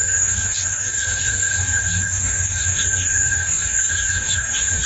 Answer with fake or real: fake